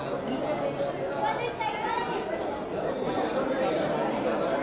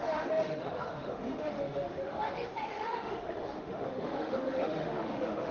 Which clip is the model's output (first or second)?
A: second